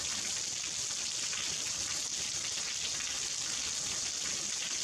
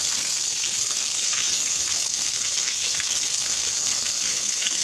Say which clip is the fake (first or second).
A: second